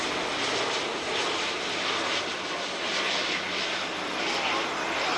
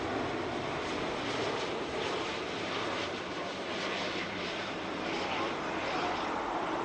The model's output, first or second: second